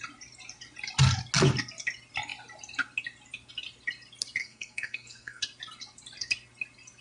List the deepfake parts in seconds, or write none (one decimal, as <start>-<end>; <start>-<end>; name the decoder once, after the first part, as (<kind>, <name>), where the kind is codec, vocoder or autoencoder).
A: 4.4-5.4 (codec, SNAC)